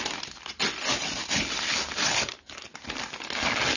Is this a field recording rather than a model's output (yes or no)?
yes